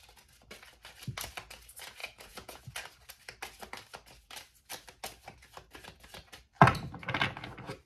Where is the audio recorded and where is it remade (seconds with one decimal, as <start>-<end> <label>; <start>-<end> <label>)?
0.0-2.0 recorded; 2.0-2.6 remade; 2.6-7.9 recorded

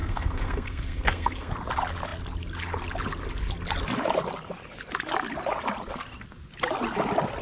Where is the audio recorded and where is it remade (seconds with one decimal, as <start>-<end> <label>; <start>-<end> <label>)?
0.0-1.5 remade; 1.5-7.4 recorded

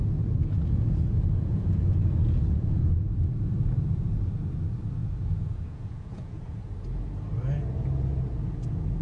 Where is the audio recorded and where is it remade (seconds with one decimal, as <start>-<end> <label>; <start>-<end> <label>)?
0.0-0.4 recorded; 0.4-2.9 remade; 2.9-5.0 recorded; 5.0-6.6 remade; 6.6-9.0 recorded

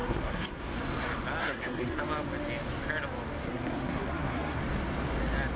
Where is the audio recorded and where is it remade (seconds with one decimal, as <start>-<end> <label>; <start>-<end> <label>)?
0.0-0.6 remade; 0.6-1.4 recorded; 1.4-2.0 remade; 2.0-3.4 recorded; 3.4-4.6 remade; 4.6-5.6 recorded